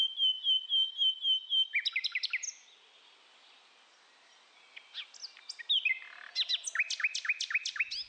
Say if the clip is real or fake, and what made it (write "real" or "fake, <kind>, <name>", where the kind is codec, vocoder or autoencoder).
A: real